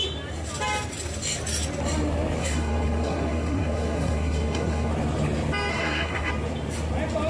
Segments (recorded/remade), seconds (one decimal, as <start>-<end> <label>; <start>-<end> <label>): 0.0-2.4 recorded; 2.4-4.9 remade; 4.9-5.7 recorded; 5.7-6.3 remade; 6.3-7.3 recorded